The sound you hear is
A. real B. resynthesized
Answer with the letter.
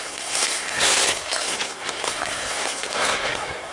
B